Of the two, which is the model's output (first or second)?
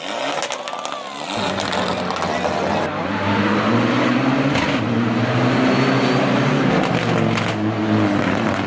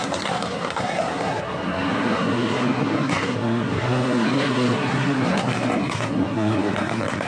second